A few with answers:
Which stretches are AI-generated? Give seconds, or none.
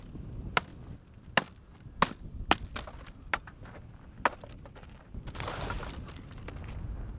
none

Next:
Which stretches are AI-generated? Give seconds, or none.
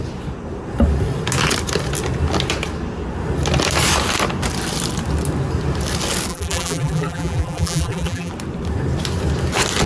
6.3-8.3 (vocoder, BigVGAN v2)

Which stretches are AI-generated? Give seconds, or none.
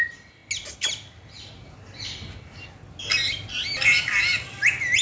none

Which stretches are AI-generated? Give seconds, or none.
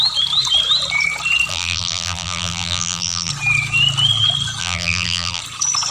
1.5-3.3 (vocoder, BigVGAN v2); 4.6-5.4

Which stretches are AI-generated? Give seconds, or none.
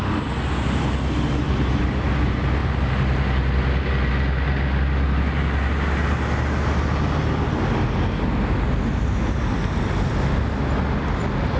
none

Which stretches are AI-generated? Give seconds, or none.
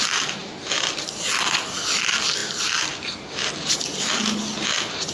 none